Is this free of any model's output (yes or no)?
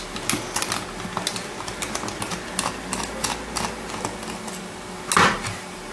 yes